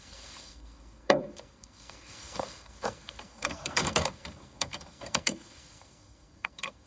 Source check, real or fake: fake